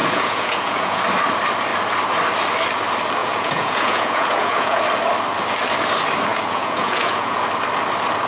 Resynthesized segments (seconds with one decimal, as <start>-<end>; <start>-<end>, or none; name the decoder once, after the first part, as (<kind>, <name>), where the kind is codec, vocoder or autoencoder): 0.0-1.0 (vocoder, Vocos); 3.2-4.8; 6.3-7.4